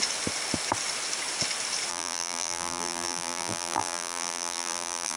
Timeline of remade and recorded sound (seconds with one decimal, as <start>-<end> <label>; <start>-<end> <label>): 0.0-1.9 recorded; 1.9-5.2 remade